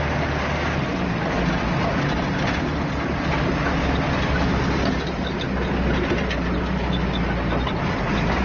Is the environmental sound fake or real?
real